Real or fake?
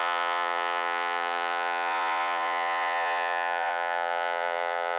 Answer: fake